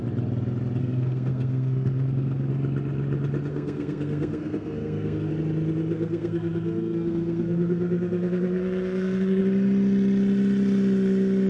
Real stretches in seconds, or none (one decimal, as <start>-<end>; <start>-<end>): 0.0-0.8; 2.5-3.5; 5.3-5.9; 9.4-11.5